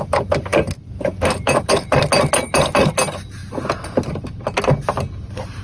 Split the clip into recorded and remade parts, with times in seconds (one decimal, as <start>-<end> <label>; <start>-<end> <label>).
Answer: 0.0-5.6 recorded